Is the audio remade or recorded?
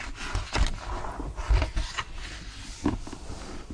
recorded